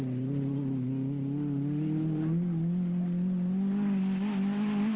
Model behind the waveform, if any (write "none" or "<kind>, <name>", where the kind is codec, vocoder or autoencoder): none